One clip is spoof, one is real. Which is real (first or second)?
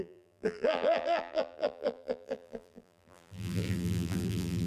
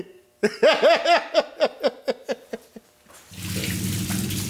second